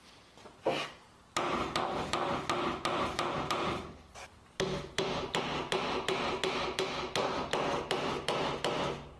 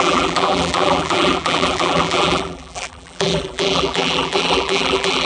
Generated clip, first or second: second